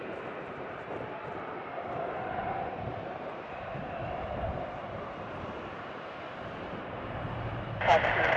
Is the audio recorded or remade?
remade